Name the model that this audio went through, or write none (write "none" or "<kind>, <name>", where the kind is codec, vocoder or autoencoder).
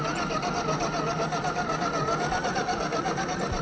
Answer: none